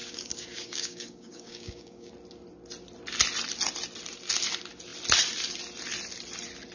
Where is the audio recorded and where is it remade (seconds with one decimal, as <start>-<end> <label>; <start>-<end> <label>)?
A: 0.0-2.1 remade; 2.1-6.7 recorded